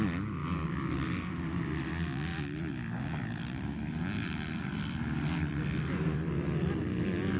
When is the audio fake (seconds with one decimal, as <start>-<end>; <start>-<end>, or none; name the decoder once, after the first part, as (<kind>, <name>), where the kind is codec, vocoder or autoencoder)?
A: 2.3-6.7 (vocoder, BigVGAN v2)